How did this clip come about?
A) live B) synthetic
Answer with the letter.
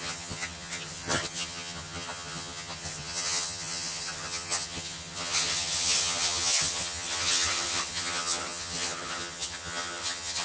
B